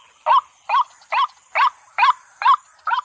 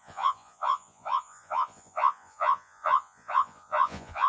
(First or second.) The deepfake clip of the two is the second